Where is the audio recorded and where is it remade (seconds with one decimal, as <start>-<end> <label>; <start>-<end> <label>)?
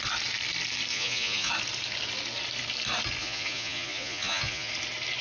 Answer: 0.0-0.9 recorded; 0.9-1.5 remade; 1.5-3.2 recorded; 3.2-4.7 remade; 4.7-5.2 recorded